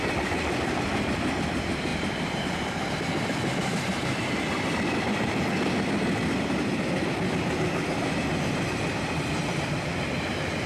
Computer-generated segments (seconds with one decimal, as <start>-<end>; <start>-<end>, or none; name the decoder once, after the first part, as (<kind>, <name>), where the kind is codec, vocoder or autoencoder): none